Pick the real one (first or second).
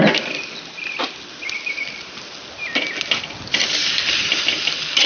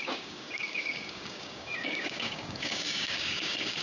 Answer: first